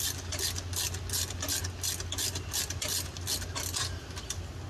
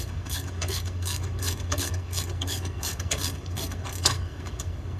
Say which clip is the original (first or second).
first